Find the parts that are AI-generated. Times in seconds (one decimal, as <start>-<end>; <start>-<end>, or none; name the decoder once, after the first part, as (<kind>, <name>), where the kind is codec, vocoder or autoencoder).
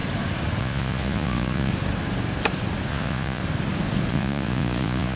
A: 0.6-1.7 (vocoder, Vocos); 2.9-3.4; 4.1-5.2